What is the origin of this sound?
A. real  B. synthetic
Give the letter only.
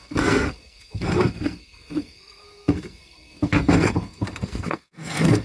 B